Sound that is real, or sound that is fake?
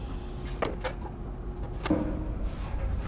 real